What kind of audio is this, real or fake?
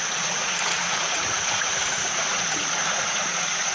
fake